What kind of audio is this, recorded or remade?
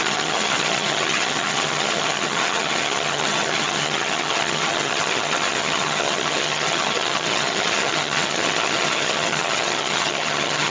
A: remade